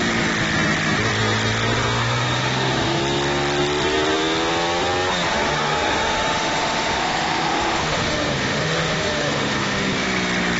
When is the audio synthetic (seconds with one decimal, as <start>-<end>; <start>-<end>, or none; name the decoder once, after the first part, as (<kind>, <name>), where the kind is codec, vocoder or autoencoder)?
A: 2.0-3.0 (autoencoder, DAC-VAE); 5.3-9.9